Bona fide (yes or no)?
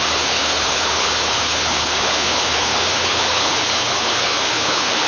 no